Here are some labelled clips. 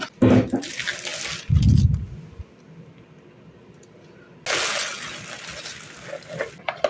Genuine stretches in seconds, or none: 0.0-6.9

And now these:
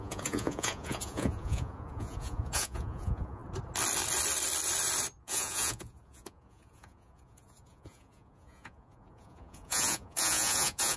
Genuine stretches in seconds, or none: 3.4-5.2

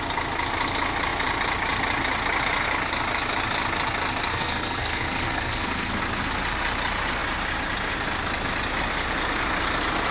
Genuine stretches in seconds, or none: 0.0-4.3; 6.0-10.1